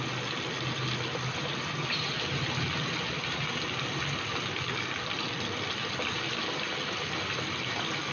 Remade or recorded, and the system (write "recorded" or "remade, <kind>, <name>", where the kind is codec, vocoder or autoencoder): recorded